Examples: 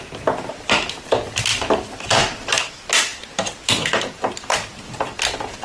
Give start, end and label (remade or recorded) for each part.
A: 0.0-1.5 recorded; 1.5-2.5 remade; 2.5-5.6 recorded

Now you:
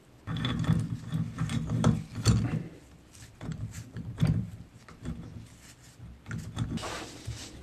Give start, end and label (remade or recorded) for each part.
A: 0.0-3.5 recorded; 3.5-4.7 remade; 4.7-7.6 recorded

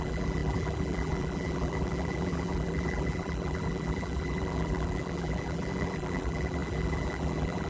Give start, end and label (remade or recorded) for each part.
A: 0.0-7.7 remade

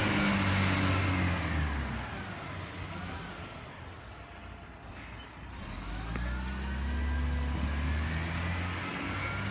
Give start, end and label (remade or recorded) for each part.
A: 0.0-9.5 recorded

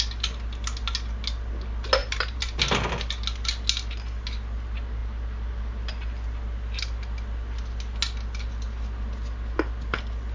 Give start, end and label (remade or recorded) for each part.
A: 0.0-2.0 recorded; 2.0-2.6 remade; 2.6-10.3 recorded

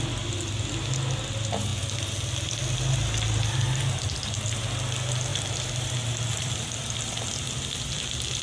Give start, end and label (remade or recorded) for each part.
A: 0.0-5.3 recorded; 5.3-6.8 remade; 6.8-8.4 recorded